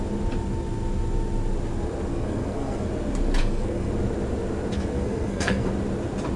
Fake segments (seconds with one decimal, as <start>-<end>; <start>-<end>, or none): 2.1-2.9; 3.4-3.9; 4.7-5.7

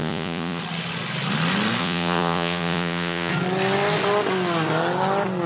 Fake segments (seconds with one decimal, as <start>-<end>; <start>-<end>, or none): 0.0-0.6; 1.8-3.3

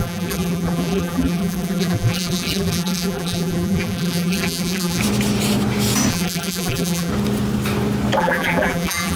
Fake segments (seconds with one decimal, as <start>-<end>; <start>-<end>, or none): 0.0-5.0; 6.1-7.1; 8.2-9.2

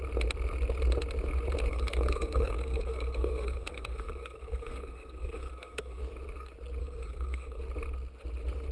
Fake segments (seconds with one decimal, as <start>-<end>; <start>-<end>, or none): 1.7-6.0; 6.8-7.6